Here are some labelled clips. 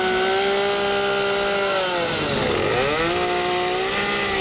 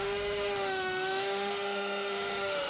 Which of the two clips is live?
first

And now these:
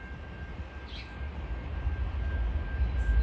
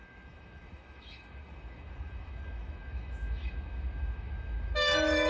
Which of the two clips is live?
first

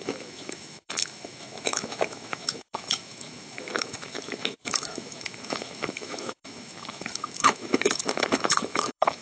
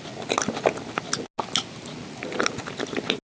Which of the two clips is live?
second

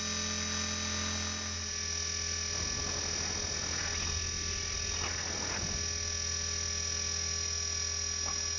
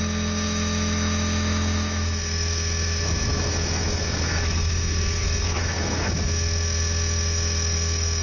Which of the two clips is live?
first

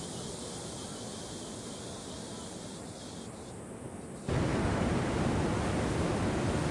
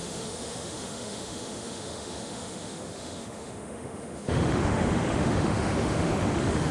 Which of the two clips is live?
first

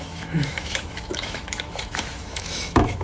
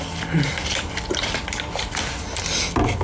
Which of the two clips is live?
second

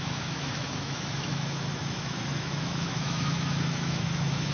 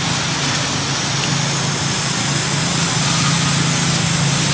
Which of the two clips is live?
second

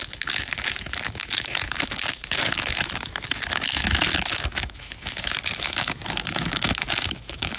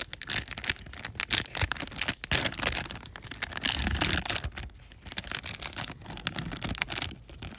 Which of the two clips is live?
second